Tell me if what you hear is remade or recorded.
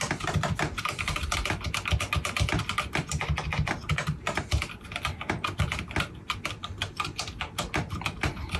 recorded